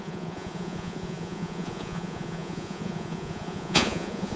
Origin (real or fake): fake